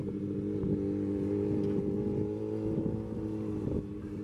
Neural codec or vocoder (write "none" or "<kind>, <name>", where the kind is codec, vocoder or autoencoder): none